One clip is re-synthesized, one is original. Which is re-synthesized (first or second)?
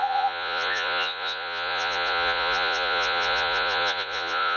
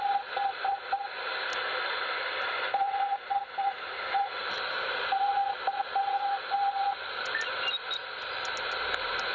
first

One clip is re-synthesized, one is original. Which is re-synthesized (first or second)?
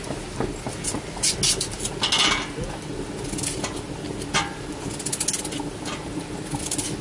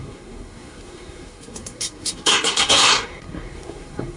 second